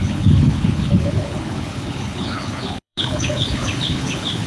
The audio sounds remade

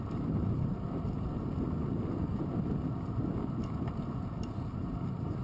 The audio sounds recorded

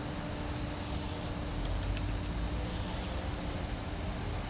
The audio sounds recorded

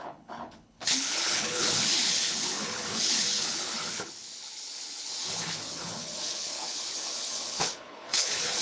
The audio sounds remade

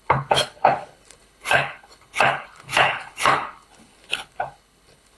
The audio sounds remade